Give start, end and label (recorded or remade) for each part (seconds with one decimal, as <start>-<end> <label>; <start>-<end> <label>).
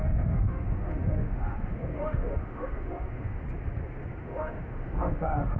0.0-3.4 remade; 3.4-4.2 recorded; 4.2-5.6 remade